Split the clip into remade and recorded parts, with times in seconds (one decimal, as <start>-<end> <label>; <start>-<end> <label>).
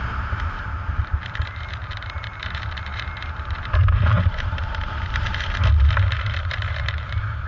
0.0-7.5 remade